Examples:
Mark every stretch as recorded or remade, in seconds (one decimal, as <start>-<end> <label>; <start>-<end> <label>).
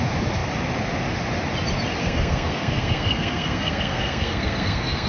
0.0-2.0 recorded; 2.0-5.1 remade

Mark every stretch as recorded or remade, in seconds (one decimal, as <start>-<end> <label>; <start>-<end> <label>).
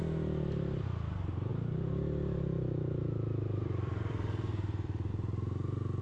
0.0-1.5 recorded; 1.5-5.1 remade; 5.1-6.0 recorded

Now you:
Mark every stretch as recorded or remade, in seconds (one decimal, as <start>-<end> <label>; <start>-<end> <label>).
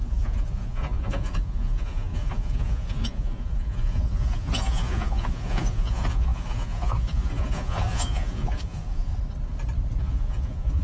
0.0-9.1 remade; 9.1-10.0 recorded; 10.0-10.8 remade